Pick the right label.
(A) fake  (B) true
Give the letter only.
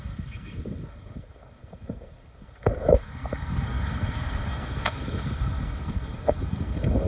A